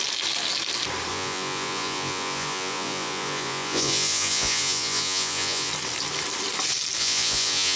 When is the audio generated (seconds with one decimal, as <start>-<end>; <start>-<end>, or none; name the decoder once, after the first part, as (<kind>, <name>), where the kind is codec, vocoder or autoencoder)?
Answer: 1.1-5.7 (vocoder, Vocos); 7.0-7.8